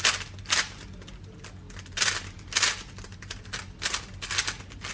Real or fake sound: real